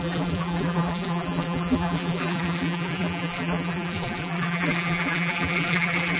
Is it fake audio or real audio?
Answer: fake